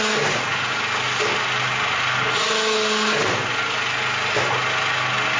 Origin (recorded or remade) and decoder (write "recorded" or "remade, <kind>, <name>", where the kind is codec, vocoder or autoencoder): recorded